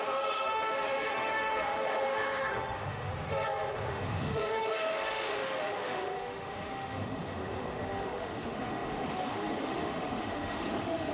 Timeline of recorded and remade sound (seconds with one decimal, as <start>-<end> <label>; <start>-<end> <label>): 0.0-3.1 remade; 3.1-3.9 recorded; 3.9-11.1 remade